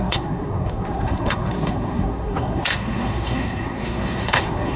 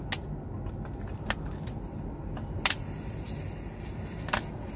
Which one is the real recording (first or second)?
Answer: second